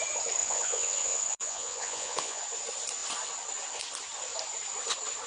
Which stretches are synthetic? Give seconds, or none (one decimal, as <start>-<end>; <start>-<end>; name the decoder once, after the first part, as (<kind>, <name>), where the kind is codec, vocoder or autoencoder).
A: 0.4-2.4 (vocoder, Vocos)